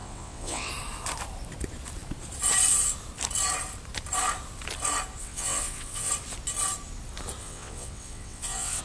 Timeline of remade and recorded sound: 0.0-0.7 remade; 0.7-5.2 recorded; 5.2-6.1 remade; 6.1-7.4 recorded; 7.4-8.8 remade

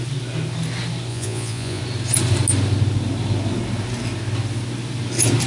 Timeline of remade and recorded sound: 0.0-1.1 recorded; 1.1-1.8 remade; 1.8-5.5 recorded